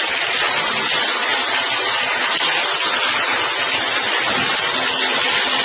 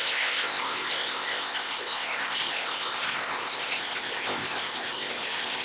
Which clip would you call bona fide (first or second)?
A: first